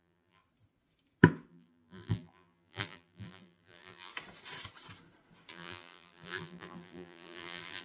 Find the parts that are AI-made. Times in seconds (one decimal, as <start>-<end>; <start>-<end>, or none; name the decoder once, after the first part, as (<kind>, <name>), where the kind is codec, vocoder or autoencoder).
0.0-0.4 (vocoder, BigVGAN v2); 1.5-4.1; 5.5-7.8